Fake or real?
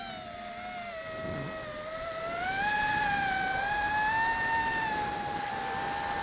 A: real